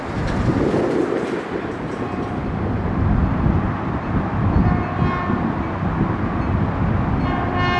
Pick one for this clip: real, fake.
real